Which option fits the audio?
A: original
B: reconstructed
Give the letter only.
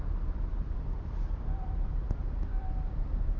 B